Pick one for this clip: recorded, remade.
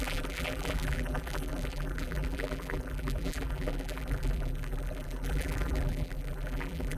remade